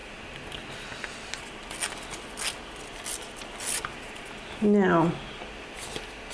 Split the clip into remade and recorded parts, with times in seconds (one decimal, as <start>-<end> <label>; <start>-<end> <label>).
0.0-6.3 recorded